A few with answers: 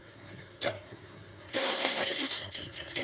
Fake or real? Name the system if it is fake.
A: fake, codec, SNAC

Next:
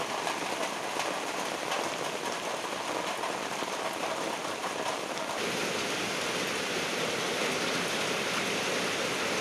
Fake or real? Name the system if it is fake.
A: real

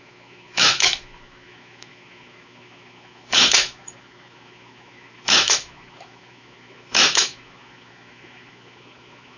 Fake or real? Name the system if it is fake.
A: fake, autoencoder, DAC-VAE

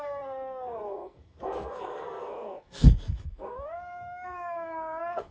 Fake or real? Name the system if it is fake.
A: fake, codec, SNAC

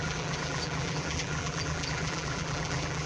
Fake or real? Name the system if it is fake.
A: fake, vocoder, BigVGAN v2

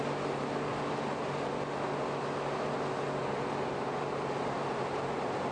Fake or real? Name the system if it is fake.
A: real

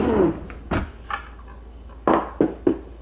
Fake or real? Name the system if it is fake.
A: real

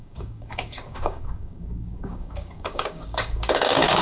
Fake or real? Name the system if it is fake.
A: fake, codec, DAC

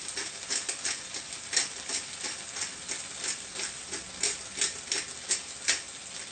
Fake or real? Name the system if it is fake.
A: real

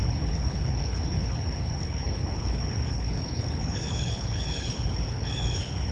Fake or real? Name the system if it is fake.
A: fake, codec, HILCodec